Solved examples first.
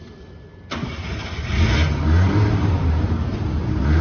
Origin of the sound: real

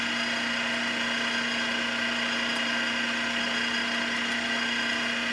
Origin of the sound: real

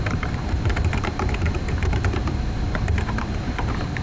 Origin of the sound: fake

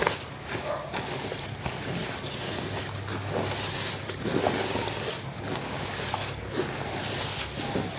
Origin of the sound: real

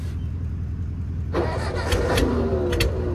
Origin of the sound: real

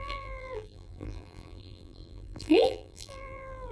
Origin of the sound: fake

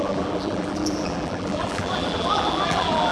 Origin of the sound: fake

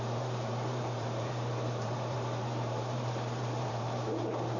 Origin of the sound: fake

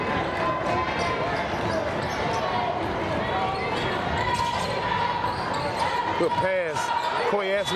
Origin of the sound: real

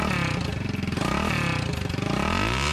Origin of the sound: real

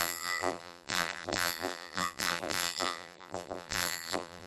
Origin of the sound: fake